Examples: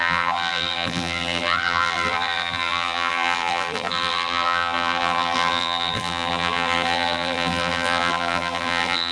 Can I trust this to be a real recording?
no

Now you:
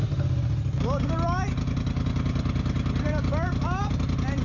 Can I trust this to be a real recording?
yes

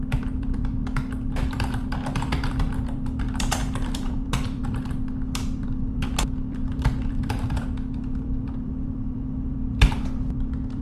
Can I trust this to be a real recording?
no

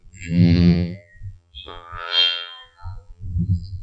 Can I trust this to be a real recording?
no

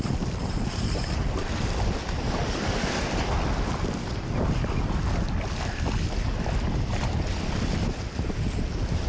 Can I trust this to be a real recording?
yes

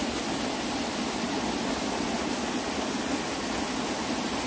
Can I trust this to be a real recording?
yes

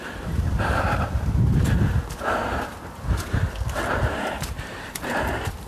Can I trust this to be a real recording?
no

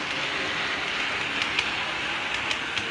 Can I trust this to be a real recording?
yes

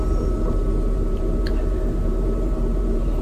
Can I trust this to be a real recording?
no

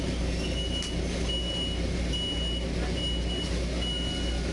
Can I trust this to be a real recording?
yes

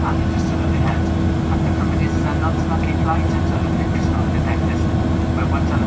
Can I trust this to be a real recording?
yes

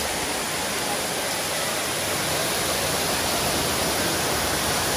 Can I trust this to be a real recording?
yes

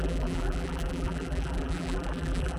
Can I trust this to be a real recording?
no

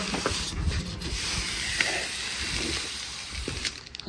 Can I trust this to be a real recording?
yes